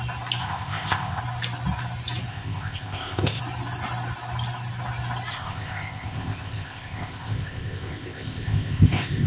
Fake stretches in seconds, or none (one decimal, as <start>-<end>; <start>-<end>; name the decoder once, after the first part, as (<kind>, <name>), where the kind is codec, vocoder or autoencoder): 0.4-1.2 (codec, ZipCodec); 2.3-3.4; 5.3-9.3